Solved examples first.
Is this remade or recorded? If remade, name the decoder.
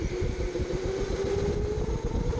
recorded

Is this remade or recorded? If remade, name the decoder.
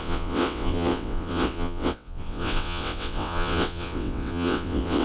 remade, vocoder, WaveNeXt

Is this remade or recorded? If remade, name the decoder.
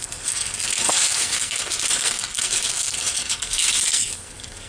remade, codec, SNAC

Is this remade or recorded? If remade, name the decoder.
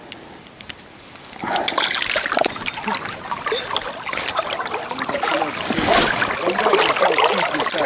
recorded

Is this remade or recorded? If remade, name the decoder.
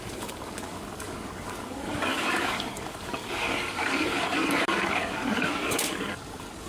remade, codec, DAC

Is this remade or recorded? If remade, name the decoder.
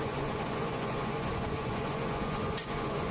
remade, vocoder, Vocos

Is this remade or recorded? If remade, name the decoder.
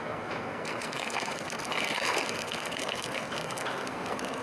remade, codec, SNAC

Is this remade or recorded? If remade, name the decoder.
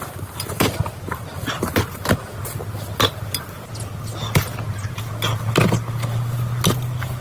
recorded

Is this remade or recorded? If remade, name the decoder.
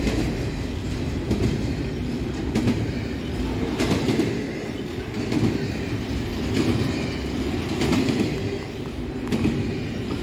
recorded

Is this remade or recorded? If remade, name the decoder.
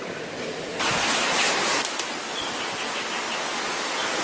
recorded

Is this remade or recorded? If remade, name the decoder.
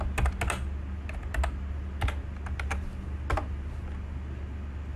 recorded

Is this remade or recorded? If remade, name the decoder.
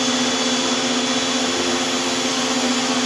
recorded